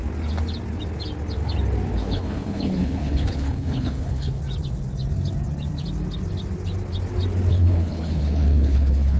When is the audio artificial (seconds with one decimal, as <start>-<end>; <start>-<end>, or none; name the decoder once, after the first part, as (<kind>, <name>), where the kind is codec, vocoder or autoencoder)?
2.0-4.4 (codec, HILCodec); 7.5-9.2